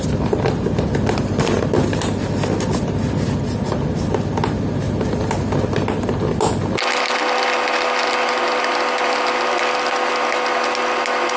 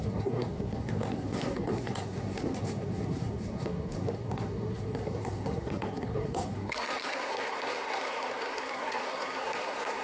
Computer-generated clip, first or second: second